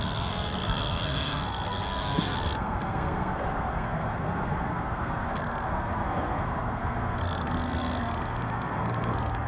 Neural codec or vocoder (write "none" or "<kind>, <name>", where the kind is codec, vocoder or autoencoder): codec, SNAC